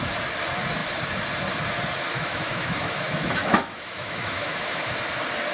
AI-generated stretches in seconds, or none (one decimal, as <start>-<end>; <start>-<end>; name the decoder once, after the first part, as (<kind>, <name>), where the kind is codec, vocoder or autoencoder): 2.1-4.9 (autoencoder, DAC-VAE)